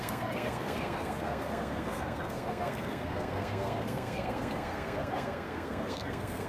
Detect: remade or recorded remade